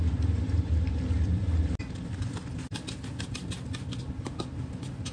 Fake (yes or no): no